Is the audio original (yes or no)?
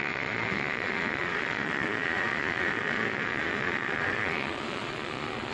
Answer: no